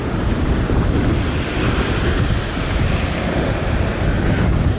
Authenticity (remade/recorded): recorded